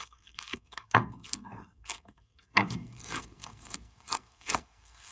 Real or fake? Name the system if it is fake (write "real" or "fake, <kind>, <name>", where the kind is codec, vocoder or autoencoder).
fake, codec, SNAC